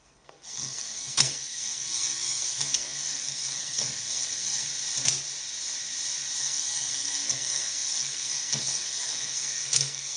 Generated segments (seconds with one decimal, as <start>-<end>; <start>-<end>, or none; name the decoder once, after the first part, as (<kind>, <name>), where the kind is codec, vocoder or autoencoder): 0.0-4.7 (codec, SNAC); 6.4-10.2